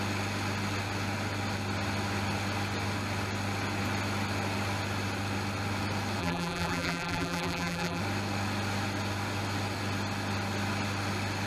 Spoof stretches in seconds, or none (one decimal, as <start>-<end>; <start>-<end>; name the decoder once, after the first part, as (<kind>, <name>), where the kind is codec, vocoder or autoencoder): 6.2-8.0 (vocoder, BigVGAN v2)